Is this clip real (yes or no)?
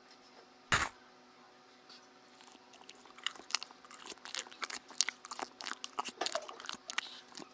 yes